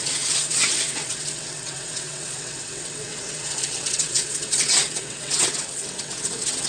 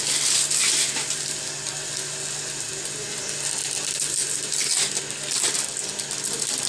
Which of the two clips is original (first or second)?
second